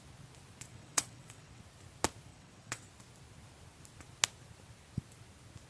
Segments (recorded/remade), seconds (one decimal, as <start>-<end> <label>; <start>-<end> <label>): 0.0-0.7 recorded; 0.7-1.6 remade; 1.6-2.3 recorded; 2.3-2.9 remade; 2.9-5.7 recorded